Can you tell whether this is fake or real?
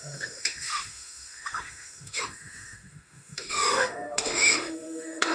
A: fake